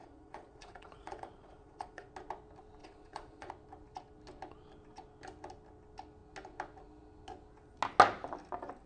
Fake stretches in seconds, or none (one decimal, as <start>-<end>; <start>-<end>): 0.0-2.1; 2.8-3.5